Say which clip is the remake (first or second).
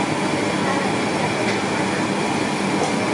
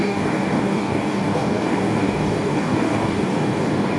second